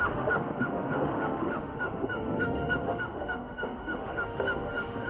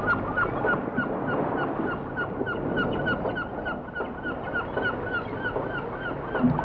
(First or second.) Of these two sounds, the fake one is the first